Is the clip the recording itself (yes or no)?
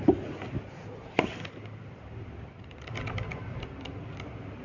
yes